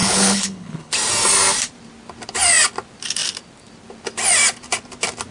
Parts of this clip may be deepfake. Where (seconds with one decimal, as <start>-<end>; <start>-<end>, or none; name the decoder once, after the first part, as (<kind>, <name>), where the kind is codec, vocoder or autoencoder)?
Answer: 0.0-0.9 (codec, HILCodec)